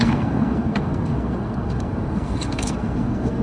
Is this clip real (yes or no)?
no